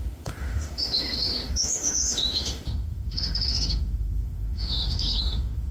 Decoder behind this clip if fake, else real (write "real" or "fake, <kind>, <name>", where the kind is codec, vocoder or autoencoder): fake, autoencoder, DAC-VAE